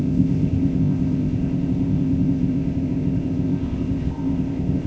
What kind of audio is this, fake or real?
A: fake